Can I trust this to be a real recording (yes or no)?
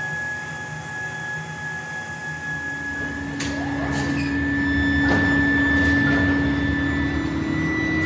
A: yes